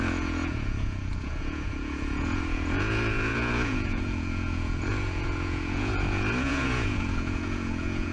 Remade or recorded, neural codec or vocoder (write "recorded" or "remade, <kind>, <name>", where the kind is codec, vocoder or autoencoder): remade, vocoder, Vocos